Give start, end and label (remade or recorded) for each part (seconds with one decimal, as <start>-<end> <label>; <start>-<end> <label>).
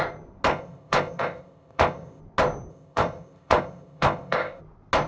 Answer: 0.0-0.5 recorded; 0.5-2.2 remade; 2.2-2.7 recorded; 2.7-4.6 remade; 4.6-5.1 recorded